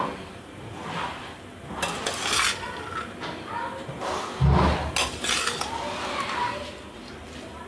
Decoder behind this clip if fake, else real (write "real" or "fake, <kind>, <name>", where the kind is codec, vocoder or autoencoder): real